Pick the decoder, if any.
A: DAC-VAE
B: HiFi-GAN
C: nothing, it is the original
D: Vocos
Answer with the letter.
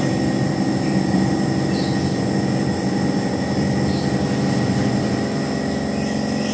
C